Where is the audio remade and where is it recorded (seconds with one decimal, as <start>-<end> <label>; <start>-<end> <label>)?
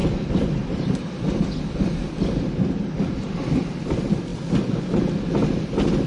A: 0.0-6.1 recorded